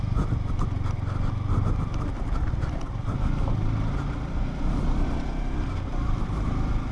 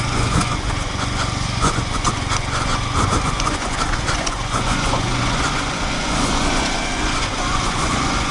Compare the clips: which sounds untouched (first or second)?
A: first